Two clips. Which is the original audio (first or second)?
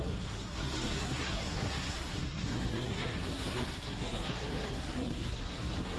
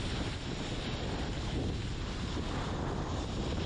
second